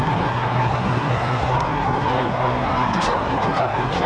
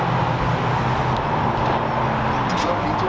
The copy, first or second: first